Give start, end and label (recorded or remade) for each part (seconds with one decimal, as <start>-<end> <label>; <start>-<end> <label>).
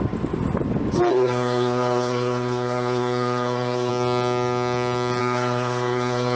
0.0-1.1 recorded; 1.1-3.9 remade; 3.9-5.2 recorded; 5.2-6.4 remade